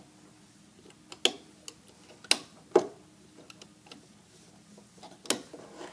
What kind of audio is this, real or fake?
real